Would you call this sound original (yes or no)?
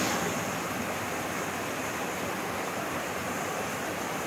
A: yes